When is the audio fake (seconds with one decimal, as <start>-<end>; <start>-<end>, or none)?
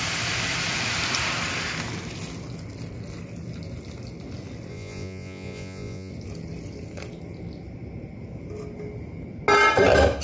4.7-6.1